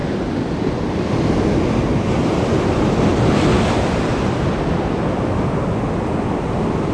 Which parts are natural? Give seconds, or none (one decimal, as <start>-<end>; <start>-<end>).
0.0-6.9

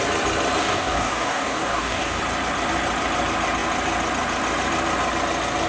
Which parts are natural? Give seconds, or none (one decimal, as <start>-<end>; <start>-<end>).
0.0-0.6; 2.2-5.7